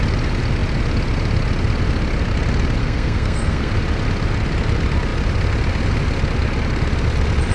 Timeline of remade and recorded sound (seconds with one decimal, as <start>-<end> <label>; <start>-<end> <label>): 0.0-2.8 recorded; 2.8-3.7 remade; 3.7-7.5 recorded